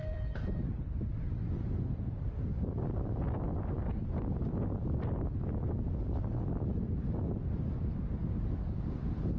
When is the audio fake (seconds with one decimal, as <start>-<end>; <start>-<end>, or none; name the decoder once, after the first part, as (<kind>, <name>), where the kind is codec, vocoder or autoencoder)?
none